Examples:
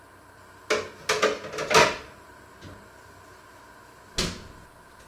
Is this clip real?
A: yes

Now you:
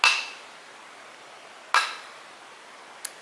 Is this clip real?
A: yes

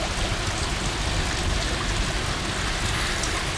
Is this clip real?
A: yes